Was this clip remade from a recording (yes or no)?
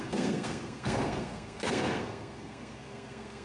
yes